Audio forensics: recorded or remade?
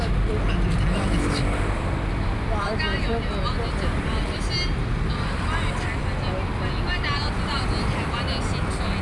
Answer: recorded